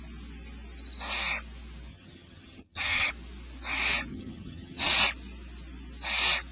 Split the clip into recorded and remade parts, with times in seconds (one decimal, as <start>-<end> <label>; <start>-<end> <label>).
0.0-1.9 recorded; 1.9-3.1 remade; 3.1-4.1 recorded; 4.1-4.9 remade; 4.9-6.5 recorded